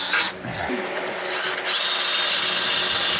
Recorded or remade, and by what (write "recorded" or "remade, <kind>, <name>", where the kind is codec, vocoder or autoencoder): recorded